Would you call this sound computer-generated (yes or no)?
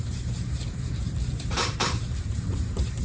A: yes